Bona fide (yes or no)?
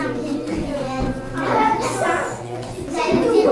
no